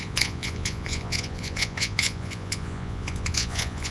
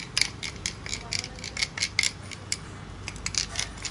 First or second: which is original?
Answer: second